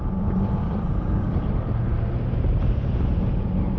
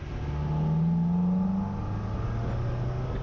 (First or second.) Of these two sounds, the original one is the second